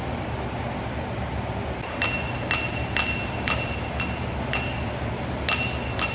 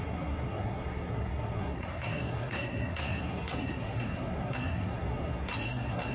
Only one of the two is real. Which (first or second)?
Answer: first